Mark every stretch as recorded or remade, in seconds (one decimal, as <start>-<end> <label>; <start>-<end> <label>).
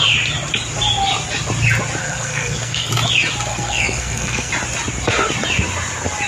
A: 0.0-2.0 recorded; 2.0-2.9 remade; 2.9-3.5 recorded; 3.5-4.5 remade; 4.5-6.3 recorded